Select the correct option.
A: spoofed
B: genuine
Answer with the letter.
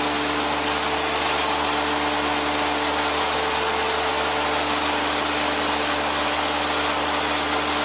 B